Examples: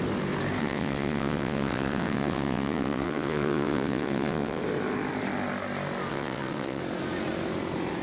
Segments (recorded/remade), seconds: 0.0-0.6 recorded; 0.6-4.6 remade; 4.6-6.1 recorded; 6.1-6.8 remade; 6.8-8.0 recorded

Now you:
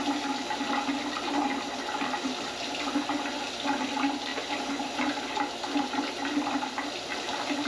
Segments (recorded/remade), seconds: 0.0-7.7 recorded

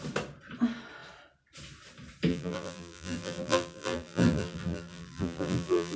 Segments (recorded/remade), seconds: 0.0-2.3 recorded; 2.3-6.0 remade

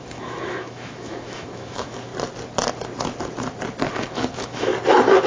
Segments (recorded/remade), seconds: 0.0-2.1 remade; 2.1-3.9 recorded; 3.9-4.7 remade; 4.7-5.3 recorded

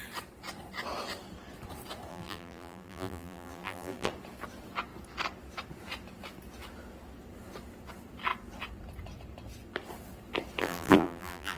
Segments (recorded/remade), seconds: 0.0-2.1 recorded; 2.1-4.1 remade; 4.1-10.6 recorded; 10.6-11.6 remade

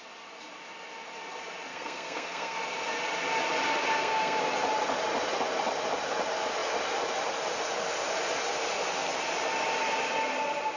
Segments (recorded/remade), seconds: 0.0-1.7 recorded; 1.7-2.6 remade; 2.6-3.9 recorded; 3.9-4.4 remade; 4.4-10.8 recorded